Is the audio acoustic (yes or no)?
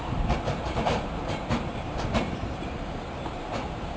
no